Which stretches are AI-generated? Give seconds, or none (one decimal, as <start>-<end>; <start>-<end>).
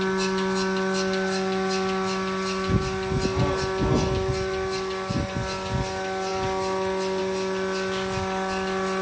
none